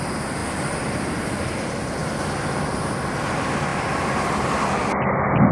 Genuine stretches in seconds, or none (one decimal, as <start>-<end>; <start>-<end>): 0.0-5.5